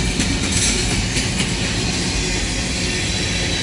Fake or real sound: real